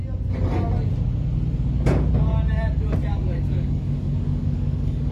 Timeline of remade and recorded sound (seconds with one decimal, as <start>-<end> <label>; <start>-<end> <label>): 0.0-3.1 recorded; 3.1-5.1 remade

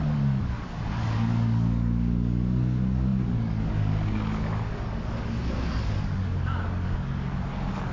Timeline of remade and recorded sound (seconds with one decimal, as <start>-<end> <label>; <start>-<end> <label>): 0.0-7.9 remade

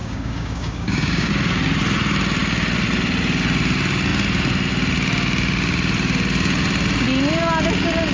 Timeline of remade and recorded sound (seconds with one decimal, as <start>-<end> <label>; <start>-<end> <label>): 0.0-1.3 remade; 1.3-8.1 recorded

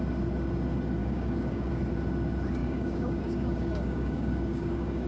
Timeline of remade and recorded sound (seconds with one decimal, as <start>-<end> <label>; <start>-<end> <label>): 0.0-1.0 recorded; 1.0-1.7 remade; 1.7-2.6 recorded; 2.6-5.1 remade

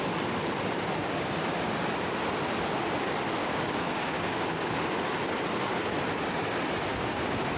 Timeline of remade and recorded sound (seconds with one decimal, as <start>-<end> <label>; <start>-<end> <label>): 0.0-1.0 recorded; 1.0-1.5 remade; 1.5-3.4 recorded; 3.4-4.7 remade; 4.7-6.9 recorded; 6.9-7.6 remade